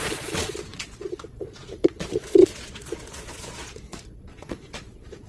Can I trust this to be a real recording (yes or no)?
no